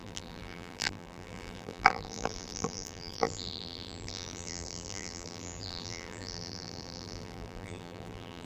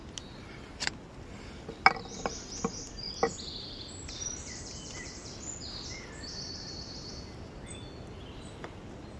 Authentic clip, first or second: second